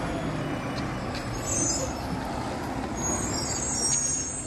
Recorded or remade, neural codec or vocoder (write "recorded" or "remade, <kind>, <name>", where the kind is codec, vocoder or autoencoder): recorded